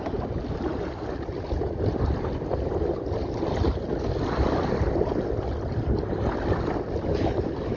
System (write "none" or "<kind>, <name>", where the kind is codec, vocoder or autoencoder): none